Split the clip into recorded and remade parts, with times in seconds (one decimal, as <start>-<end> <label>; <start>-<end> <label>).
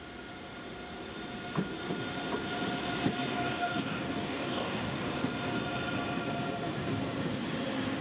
0.0-3.3 recorded; 3.3-5.0 remade; 5.0-8.0 recorded